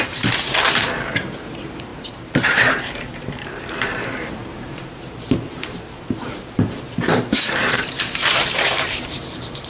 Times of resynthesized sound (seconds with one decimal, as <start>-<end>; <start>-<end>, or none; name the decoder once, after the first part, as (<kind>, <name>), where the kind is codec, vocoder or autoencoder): 0.0-9.7 (vocoder, BigVGAN v2)